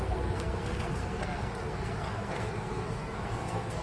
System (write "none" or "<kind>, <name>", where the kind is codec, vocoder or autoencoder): codec, SNAC